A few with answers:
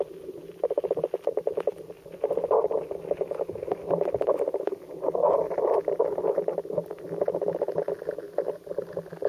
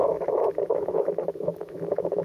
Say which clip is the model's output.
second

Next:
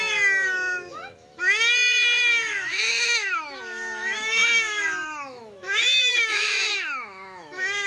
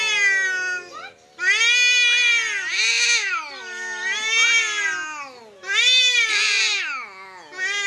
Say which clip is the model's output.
first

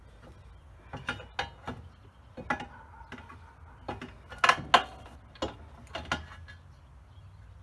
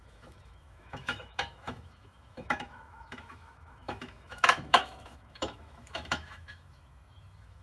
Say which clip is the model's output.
second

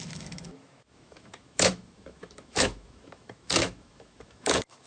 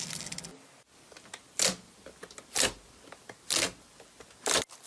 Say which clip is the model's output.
first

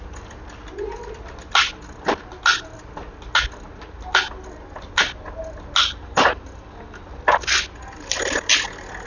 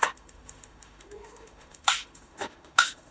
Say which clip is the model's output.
second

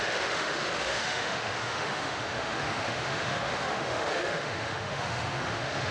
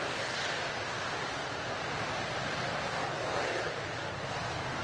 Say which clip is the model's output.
first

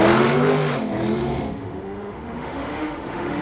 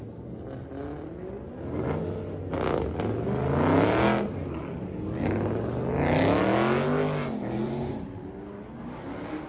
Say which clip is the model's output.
first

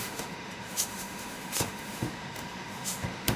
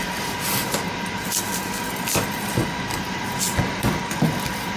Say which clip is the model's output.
first